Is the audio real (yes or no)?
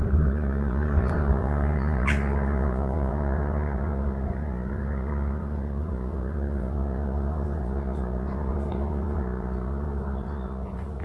no